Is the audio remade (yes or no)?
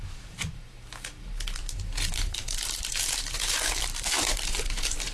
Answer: yes